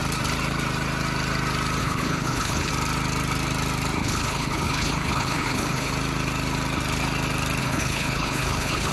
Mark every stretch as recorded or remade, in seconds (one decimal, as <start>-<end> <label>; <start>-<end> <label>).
0.0-1.8 recorded; 1.8-2.7 remade; 2.7-4.0 recorded; 4.0-5.9 remade; 5.9-7.6 recorded; 7.6-8.9 remade